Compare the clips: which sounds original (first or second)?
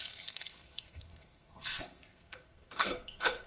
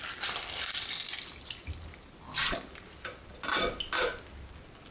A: second